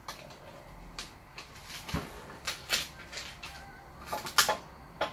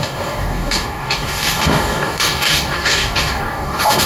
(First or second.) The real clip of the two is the first